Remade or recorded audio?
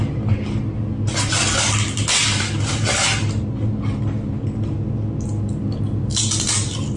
recorded